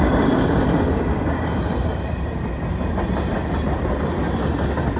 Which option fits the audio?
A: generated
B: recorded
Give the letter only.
B